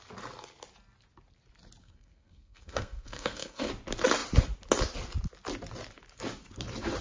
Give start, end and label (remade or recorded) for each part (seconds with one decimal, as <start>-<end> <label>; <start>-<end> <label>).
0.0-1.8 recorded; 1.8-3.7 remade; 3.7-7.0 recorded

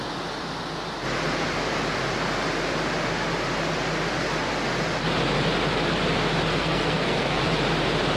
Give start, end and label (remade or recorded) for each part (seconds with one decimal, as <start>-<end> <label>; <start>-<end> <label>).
0.0-6.6 recorded; 6.6-7.4 remade; 7.4-8.2 recorded

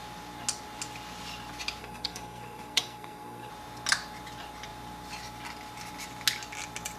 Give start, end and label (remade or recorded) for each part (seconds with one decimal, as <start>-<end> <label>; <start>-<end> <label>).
0.0-1.8 recorded; 1.8-3.5 remade; 3.5-7.0 recorded

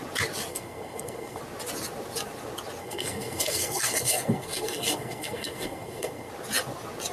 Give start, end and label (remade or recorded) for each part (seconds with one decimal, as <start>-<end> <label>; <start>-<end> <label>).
0.0-0.5 recorded; 0.5-1.4 remade; 1.4-2.8 recorded; 2.8-6.3 remade; 6.3-7.1 recorded

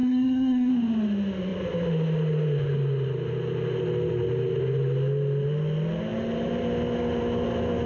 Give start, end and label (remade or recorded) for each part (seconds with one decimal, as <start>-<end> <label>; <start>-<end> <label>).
0.0-0.7 remade; 0.7-7.9 recorded

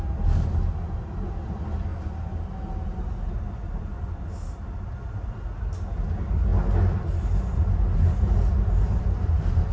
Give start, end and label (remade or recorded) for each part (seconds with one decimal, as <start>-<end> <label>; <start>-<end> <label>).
0.0-9.7 recorded